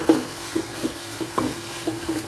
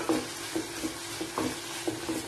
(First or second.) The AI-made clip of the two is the first